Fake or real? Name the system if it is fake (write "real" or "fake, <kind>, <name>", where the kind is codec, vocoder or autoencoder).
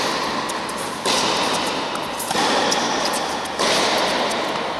real